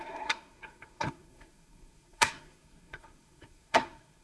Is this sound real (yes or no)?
no